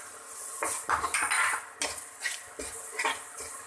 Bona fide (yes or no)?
yes